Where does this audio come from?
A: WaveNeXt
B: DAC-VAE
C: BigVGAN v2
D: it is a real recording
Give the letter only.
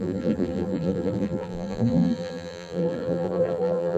C